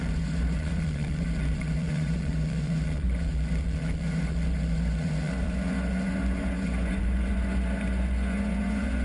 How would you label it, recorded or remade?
remade